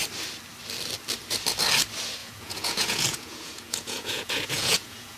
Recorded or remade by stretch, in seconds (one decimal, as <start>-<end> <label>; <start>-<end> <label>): 0.0-2.2 recorded; 2.2-5.2 remade